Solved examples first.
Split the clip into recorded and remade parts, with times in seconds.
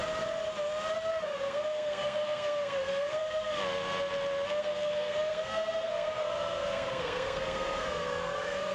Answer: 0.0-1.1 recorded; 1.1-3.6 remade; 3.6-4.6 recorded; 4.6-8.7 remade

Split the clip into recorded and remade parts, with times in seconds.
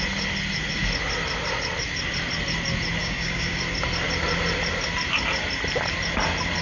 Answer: 0.0-3.0 recorded; 3.0-3.6 remade; 3.6-6.6 recorded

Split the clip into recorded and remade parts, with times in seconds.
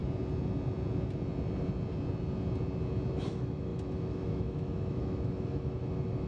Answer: 0.0-3.1 recorded; 3.1-6.3 remade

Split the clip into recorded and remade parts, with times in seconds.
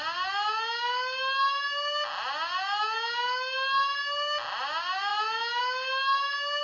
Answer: 0.0-6.6 recorded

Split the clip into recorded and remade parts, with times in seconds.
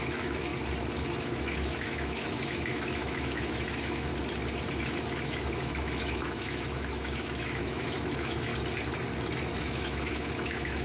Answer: 0.0-0.5 remade; 0.5-1.2 recorded; 1.2-4.1 remade; 4.1-4.7 recorded; 4.7-8.5 remade; 8.5-9.6 recorded; 9.6-10.8 remade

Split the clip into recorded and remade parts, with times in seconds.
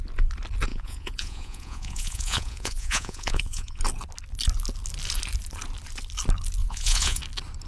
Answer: 0.0-0.7 recorded; 0.7-3.8 remade; 3.8-6.6 recorded; 6.6-7.2 remade; 7.2-7.7 recorded